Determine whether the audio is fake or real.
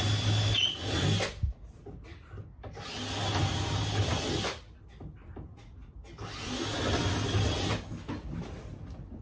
real